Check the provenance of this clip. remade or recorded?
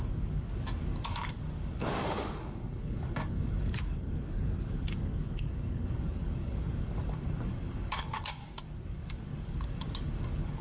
remade